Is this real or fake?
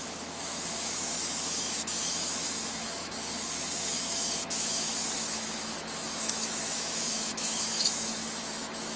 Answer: fake